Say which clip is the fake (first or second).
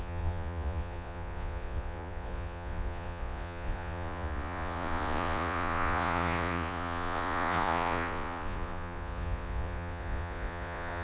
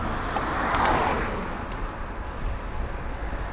first